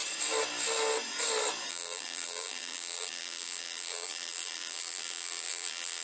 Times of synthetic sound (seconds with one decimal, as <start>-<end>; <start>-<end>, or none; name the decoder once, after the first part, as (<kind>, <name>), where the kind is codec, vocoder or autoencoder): 1.7-6.0 (vocoder, BigVGAN v2)